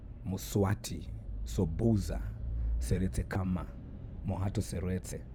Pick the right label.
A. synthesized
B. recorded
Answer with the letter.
A